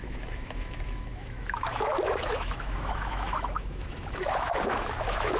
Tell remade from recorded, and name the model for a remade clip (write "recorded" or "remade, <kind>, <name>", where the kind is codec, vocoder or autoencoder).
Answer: remade, autoencoder, DAC-VAE